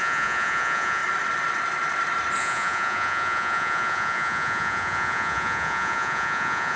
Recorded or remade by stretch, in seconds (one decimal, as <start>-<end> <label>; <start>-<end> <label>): 0.0-1.0 remade; 1.0-2.4 recorded; 2.4-6.8 remade